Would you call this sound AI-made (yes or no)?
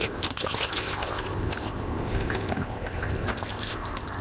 yes